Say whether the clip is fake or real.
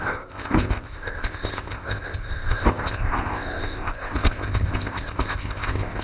fake